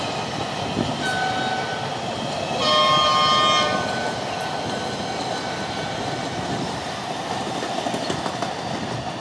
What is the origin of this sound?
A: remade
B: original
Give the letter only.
B